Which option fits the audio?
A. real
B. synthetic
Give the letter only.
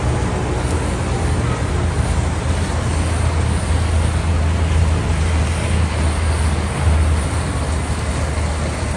A